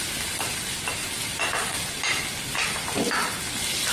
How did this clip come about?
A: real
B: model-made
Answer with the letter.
A